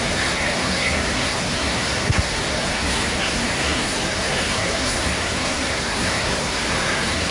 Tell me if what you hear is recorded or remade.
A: remade